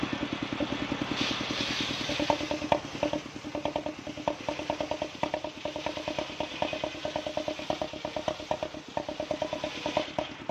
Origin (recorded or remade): recorded